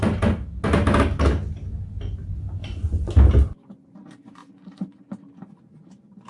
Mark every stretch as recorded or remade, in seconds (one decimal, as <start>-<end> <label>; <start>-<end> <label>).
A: 0.0-2.6 recorded; 2.6-3.1 remade; 3.1-4.4 recorded; 4.4-5.1 remade; 5.1-6.3 recorded